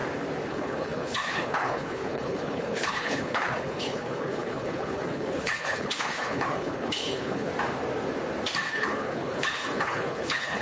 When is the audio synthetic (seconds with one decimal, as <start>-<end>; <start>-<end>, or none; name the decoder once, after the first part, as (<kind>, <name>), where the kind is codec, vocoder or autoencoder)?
0.5-7.5 (codec, HILCodec); 8.7-10.6

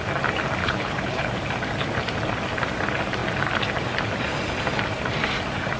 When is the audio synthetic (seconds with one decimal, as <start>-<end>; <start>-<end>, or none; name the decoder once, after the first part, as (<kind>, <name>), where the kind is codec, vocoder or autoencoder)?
0.6-1.3 (codec, HILCodec)

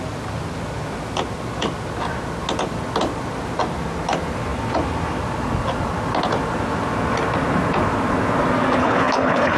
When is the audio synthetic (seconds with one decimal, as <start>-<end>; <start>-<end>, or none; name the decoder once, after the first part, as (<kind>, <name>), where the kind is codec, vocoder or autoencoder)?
8.8-9.6 (codec, HILCodec)

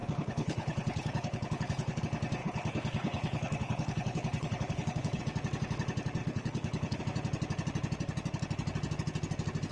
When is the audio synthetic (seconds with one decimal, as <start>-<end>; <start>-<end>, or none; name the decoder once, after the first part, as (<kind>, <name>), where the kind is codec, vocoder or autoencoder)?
0.0-2.0 (codec, HILCodec); 2.4-5.2; 6.2-7.0

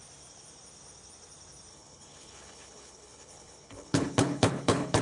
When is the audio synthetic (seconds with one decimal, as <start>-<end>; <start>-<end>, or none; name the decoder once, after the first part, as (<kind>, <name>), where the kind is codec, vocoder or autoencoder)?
1.7-5.0 (codec, HILCodec)